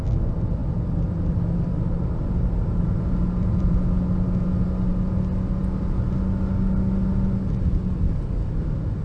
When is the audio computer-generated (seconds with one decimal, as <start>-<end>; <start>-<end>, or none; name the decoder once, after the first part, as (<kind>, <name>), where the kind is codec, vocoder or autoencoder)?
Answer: 0.6-3.7 (vocoder, BigVGAN v2)